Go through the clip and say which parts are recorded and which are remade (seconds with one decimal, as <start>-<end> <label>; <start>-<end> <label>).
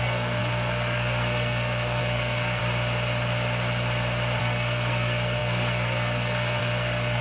0.0-2.6 remade; 2.6-4.4 recorded; 4.4-7.2 remade